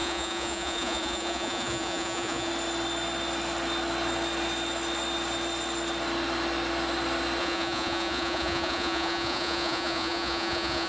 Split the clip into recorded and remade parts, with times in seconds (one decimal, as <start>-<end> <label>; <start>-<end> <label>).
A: 0.0-2.5 remade; 2.5-7.4 recorded; 7.4-10.9 remade